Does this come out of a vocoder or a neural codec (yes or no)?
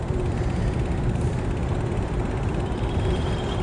yes